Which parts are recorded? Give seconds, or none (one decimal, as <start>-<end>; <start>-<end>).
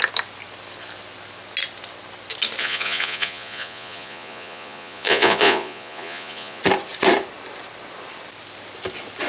0.0-2.6; 6.6-9.3